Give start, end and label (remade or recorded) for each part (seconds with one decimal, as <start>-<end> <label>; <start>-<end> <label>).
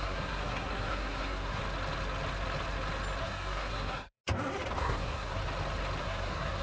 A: 0.0-1.6 remade; 1.6-3.2 recorded; 3.2-4.2 remade; 4.2-4.8 recorded; 4.8-5.4 remade; 5.4-6.0 recorded; 6.0-6.6 remade